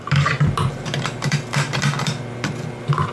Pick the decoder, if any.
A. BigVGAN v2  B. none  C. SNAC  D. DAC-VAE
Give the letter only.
B